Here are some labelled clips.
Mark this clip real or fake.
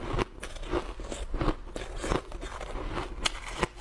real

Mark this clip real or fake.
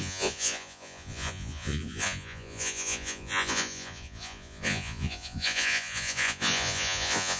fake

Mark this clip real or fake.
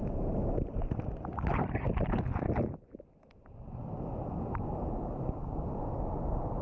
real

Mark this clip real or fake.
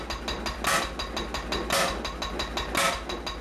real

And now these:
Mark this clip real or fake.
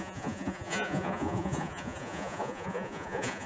fake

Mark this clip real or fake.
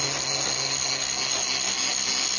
real